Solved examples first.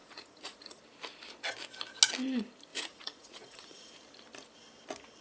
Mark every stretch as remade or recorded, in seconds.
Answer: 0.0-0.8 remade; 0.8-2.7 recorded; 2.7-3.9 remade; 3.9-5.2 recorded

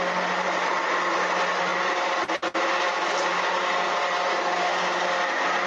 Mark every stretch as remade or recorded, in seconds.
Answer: 0.0-5.7 recorded

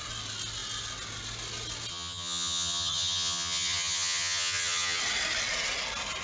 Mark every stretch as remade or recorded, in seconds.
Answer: 0.0-1.9 recorded; 1.9-5.0 remade; 5.0-6.2 recorded

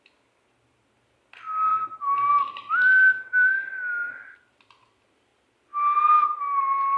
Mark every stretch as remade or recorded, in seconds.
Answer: 0.0-7.0 recorded